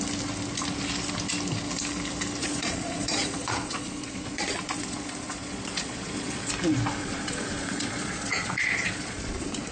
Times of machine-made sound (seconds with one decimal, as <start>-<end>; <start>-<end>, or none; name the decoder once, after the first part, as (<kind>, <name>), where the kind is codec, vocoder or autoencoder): 2.4-6.5 (vocoder, Vocos); 7.0-9.7